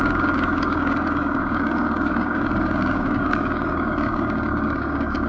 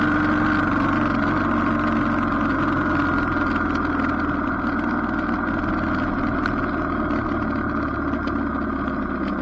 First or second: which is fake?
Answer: first